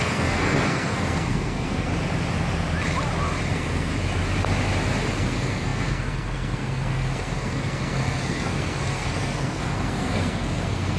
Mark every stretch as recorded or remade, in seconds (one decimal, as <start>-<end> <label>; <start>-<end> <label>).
0.0-1.9 remade; 1.9-3.5 recorded; 3.5-3.9 remade; 3.9-5.1 recorded; 5.1-11.0 remade